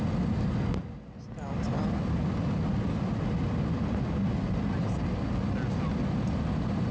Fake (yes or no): no